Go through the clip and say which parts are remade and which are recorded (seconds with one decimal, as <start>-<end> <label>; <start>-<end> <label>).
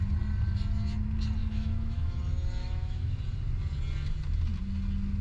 0.0-1.4 recorded; 1.4-2.2 remade; 2.2-2.6 recorded; 2.6-3.2 remade; 3.2-5.2 recorded